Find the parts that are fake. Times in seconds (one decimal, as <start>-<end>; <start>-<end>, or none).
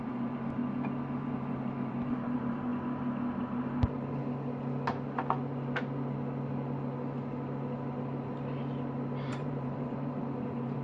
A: 0.0-0.6; 1.2-2.7; 3.4-4.2; 9.3-10.8